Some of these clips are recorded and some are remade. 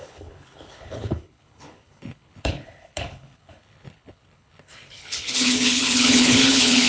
remade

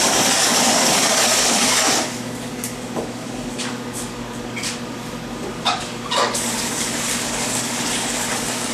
remade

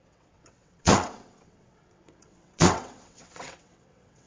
remade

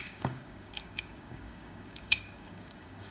remade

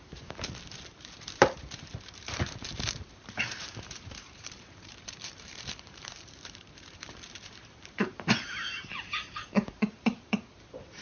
remade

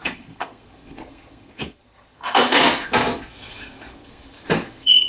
remade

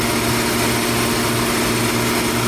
recorded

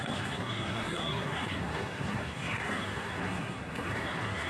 remade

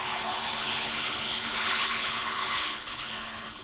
remade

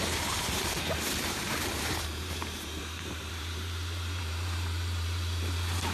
remade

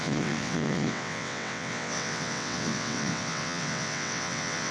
remade